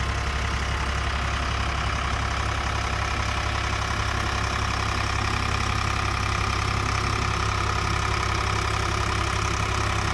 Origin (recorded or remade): recorded